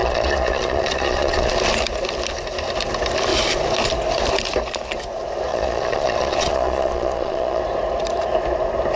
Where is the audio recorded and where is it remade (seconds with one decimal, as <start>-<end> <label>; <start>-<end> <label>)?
0.0-1.5 remade; 1.5-5.5 recorded; 5.5-7.6 remade; 7.6-9.0 recorded